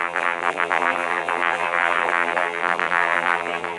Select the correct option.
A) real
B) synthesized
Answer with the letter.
B